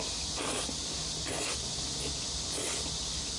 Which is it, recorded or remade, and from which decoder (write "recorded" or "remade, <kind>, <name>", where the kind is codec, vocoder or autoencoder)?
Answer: recorded